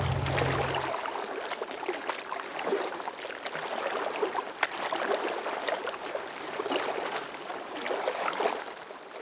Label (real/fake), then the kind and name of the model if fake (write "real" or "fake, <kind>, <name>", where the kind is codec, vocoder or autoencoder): real